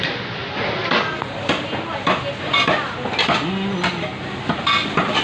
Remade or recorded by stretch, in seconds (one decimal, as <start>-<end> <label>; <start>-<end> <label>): 0.0-5.2 recorded